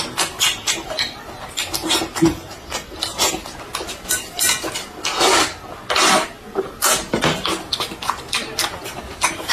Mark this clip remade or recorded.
recorded